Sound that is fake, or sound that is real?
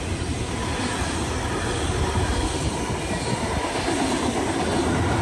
real